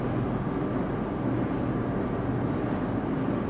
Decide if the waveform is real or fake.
real